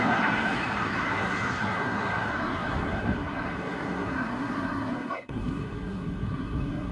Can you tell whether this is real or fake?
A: fake